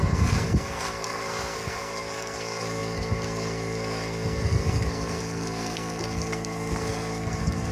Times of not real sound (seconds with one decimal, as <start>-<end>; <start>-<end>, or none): 0.0-7.7